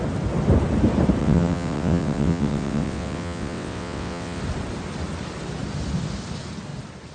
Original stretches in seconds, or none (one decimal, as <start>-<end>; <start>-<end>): 0.0-1.2; 4.4-7.1